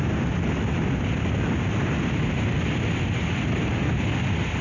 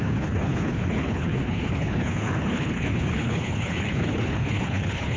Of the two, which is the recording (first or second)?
first